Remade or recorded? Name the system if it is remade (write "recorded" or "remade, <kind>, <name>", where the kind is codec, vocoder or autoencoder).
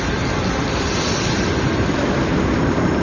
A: recorded